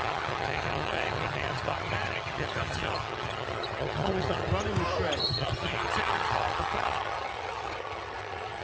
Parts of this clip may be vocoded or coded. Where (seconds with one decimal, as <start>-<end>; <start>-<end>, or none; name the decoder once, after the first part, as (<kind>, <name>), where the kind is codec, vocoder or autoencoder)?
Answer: 0.0-4.5 (vocoder, HiFi-GAN); 5.2-8.6

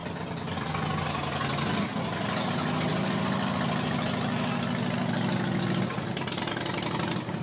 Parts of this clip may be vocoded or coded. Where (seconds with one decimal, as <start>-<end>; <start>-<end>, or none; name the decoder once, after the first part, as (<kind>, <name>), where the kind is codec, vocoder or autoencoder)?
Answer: none